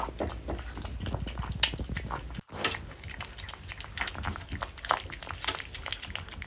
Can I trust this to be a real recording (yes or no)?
yes